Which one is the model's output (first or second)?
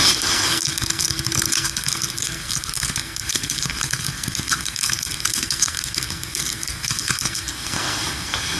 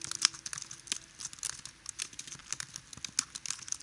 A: first